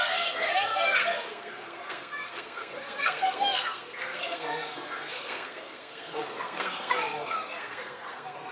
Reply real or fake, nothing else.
fake